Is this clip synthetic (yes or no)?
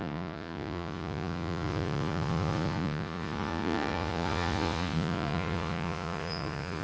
yes